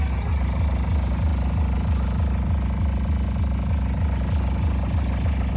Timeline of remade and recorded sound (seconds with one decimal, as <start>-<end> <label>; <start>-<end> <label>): 0.0-5.6 recorded